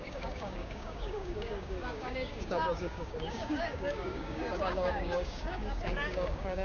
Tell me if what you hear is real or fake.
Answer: fake